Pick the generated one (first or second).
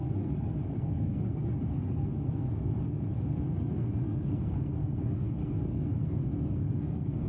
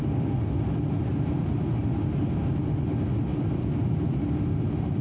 first